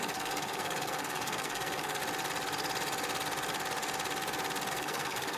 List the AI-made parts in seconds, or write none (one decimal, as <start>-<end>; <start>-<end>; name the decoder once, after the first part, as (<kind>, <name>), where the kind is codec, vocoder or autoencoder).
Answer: 0.0-2.0 (codec, SNAC); 4.7-5.4